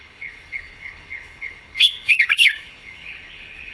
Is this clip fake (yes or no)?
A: yes